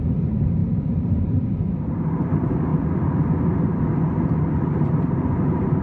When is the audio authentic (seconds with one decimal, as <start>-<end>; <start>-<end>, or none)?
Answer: 2.7-4.5